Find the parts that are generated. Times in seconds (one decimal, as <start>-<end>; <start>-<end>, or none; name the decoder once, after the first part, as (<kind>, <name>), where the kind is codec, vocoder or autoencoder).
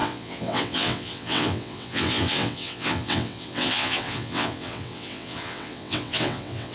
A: 0.0-6.7 (vocoder, WaveNeXt)